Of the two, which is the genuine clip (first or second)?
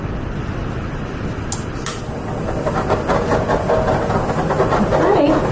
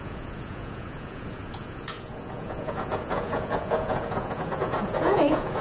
first